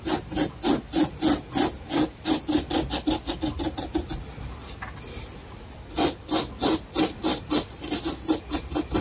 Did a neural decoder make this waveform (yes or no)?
no